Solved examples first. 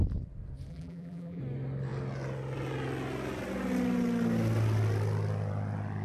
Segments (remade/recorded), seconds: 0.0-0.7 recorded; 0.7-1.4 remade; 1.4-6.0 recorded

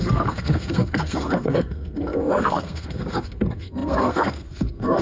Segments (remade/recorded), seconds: 0.0-5.0 remade

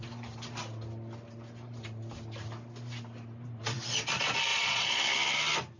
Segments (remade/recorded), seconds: 0.0-4.5 recorded; 4.5-5.0 remade; 5.0-5.8 recorded

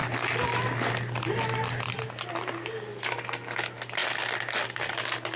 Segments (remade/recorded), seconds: 0.0-3.2 remade; 3.2-4.0 recorded; 4.0-4.9 remade; 4.9-5.4 recorded

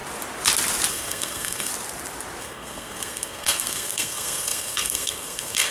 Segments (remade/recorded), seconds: 0.0-0.9 recorded; 0.9-1.7 remade; 1.7-2.4 recorded; 2.4-5.7 remade

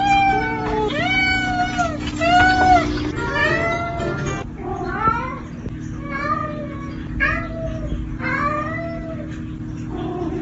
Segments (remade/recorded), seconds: 0.0-6.4 recorded; 6.4-7.7 remade; 7.7-10.4 recorded

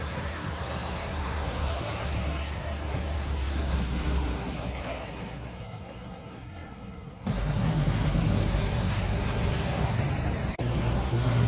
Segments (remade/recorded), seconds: 0.0-10.0 remade; 10.0-10.5 recorded; 10.5-11.5 remade

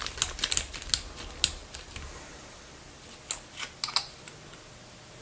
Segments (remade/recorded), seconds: 0.0-5.2 recorded